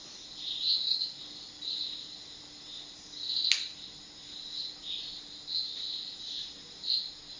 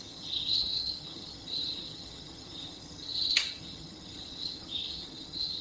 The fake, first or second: second